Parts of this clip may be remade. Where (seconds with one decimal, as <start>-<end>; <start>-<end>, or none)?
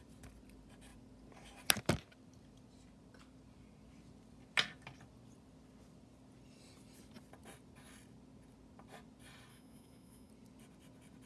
9.5-10.3